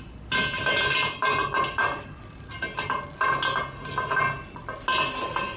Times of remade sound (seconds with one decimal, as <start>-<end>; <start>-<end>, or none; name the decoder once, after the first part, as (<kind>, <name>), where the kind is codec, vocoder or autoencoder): none